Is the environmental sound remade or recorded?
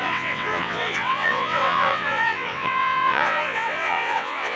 remade